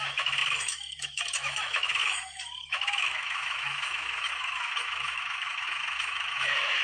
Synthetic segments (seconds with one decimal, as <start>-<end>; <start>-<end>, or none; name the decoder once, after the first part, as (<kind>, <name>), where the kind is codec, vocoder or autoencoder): 0.0-6.8 (autoencoder, DAC-VAE)